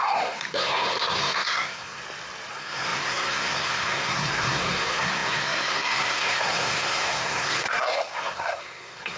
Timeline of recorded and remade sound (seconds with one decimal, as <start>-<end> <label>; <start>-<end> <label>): 0.0-2.0 remade; 2.0-2.5 recorded; 2.5-9.2 remade